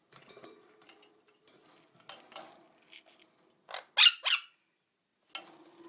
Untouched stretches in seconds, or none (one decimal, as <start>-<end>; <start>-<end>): 1.6-4.3; 5.1-5.9